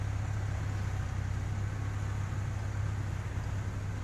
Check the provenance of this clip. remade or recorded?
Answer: recorded